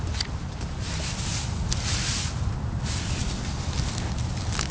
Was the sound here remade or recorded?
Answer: recorded